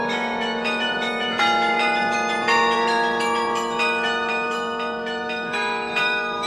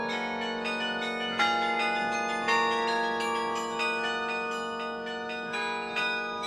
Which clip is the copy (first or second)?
first